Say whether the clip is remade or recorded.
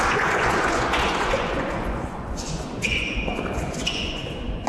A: remade